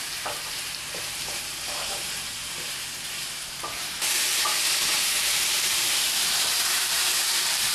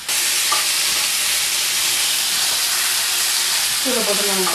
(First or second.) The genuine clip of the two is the second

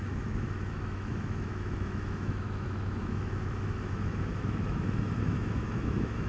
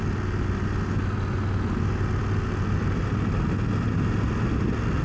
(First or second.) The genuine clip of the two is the second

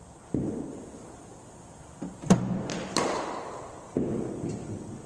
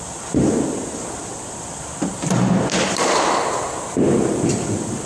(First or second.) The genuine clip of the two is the first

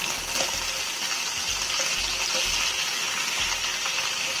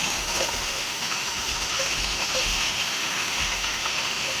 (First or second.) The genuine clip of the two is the first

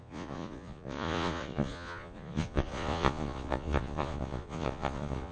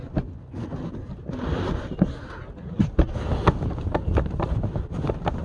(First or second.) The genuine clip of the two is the second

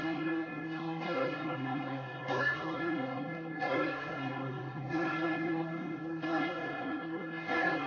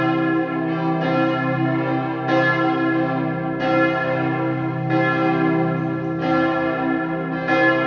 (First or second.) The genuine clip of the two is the second